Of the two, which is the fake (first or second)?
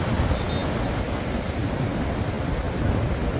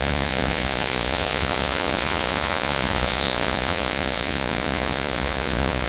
second